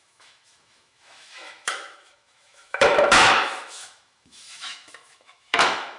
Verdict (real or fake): fake